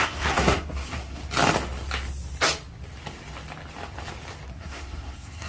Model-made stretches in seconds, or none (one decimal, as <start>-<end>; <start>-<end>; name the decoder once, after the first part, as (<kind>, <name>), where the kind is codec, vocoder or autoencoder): 0.0-1.2 (codec, SNAC); 4.5-5.5